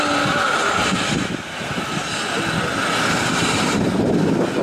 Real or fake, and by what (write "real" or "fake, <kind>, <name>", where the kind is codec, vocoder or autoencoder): real